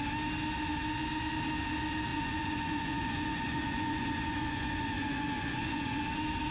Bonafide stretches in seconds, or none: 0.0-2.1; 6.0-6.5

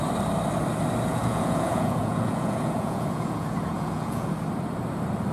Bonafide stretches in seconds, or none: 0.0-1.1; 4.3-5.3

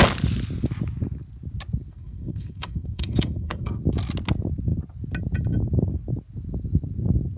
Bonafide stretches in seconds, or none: 0.0-1.9; 3.8-7.4

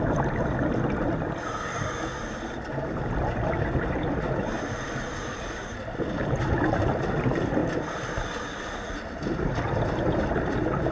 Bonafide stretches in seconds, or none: 0.0-10.9

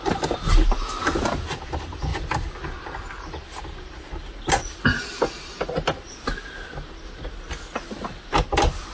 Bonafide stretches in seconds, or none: 0.0-8.9

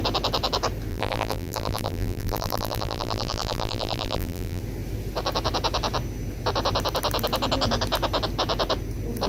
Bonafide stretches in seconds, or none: 0.0-0.9; 4.6-9.3